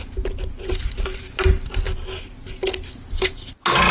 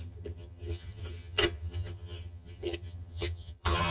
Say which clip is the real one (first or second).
first